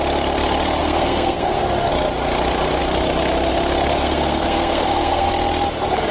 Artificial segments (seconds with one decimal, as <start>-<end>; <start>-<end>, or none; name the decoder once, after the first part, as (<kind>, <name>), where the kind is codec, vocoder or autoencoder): 0.8-1.6 (codec, SNAC); 4.0-5.3